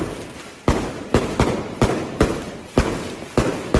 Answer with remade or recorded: remade